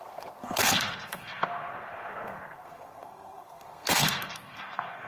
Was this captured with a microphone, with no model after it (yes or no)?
no